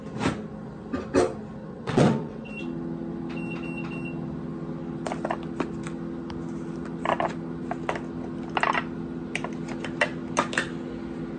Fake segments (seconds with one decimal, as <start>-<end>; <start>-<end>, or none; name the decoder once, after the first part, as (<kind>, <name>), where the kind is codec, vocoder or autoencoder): 1.6-2.5 (vocoder, WaveNeXt)